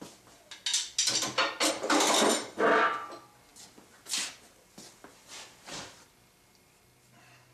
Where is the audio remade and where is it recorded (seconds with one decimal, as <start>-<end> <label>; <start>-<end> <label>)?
0.0-7.5 recorded